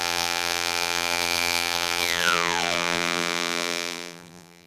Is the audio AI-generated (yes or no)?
yes